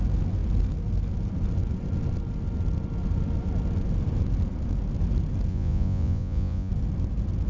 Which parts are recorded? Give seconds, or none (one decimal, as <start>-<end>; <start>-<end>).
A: 0.0-5.5; 6.7-7.5